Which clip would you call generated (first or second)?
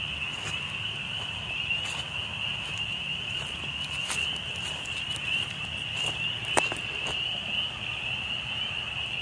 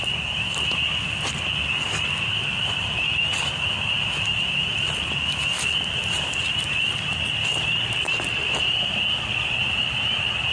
second